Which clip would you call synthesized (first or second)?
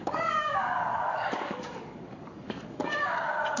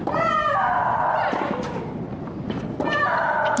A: first